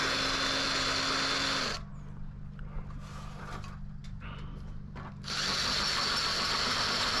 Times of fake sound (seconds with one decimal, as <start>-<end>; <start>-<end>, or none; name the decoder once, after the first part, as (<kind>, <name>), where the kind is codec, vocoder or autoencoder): 4.0-5.1 (vocoder, BigVGAN v2)